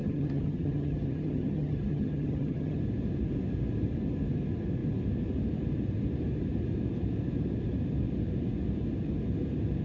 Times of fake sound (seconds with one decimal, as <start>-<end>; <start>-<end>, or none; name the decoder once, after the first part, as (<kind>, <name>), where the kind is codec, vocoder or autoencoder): 0.0-2.8 (vocoder, HiFi-GAN)